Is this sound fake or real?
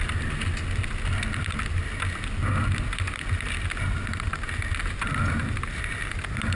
real